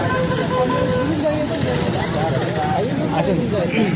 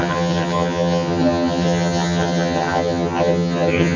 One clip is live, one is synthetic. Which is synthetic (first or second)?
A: second